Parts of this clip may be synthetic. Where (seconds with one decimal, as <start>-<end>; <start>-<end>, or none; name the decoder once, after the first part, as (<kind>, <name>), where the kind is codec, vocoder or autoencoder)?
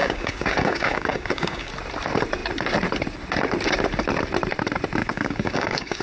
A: 0.0-1.7 (codec, DAC); 5.0-6.0